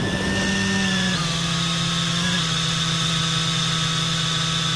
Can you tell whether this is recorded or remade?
recorded